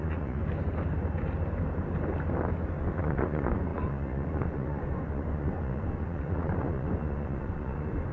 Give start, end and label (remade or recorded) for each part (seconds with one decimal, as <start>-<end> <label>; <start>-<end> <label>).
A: 0.0-0.4 remade; 0.4-2.8 recorded; 2.8-8.1 remade